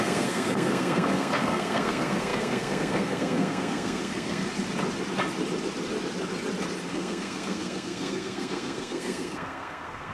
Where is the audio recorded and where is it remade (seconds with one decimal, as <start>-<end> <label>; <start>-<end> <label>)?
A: 0.0-4.4 remade; 4.4-6.9 recorded; 6.9-10.1 remade